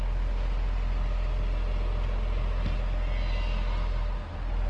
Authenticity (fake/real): real